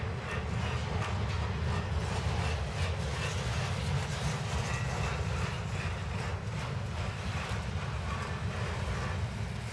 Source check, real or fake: real